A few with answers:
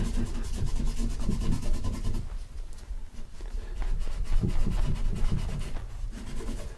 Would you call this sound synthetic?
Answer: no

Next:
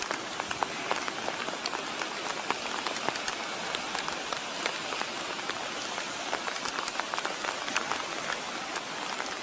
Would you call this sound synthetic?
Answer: yes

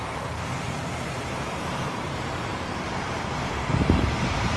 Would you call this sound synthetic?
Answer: yes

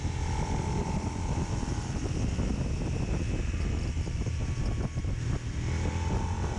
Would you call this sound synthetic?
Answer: no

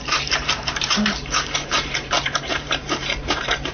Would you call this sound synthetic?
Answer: yes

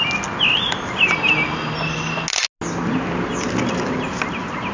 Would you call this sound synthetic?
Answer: no